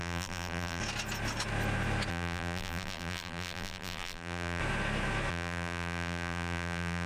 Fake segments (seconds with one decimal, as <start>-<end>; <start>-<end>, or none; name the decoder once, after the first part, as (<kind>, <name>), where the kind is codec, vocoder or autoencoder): 0.0-0.8 (vocoder, BigVGAN v2); 2.1-4.6; 5.3-7.1